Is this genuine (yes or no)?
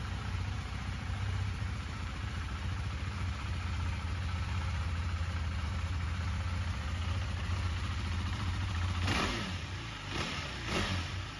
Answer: no